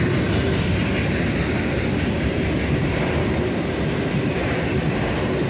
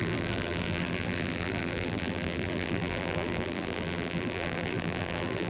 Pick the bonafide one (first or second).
first